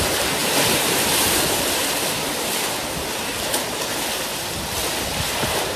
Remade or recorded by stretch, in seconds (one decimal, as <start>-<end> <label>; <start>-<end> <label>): 0.0-5.8 recorded